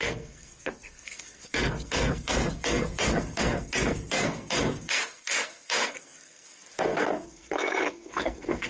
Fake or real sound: fake